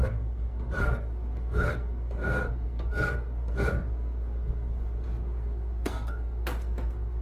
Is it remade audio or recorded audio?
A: remade